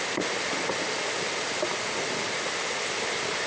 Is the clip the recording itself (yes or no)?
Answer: yes